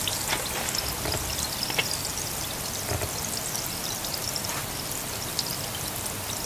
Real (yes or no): yes